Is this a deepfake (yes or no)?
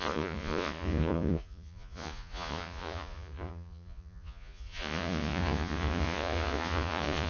yes